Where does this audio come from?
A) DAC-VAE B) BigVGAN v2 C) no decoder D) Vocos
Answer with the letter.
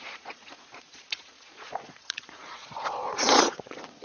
D